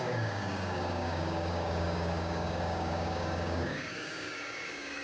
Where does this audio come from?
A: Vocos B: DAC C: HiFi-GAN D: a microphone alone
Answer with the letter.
B